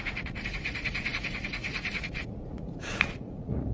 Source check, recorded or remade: remade